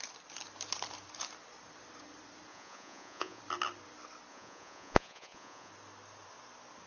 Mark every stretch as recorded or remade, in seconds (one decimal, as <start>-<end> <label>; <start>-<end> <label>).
0.0-2.5 recorded; 2.5-3.4 remade; 3.4-4.3 recorded; 4.3-5.7 remade; 5.7-6.9 recorded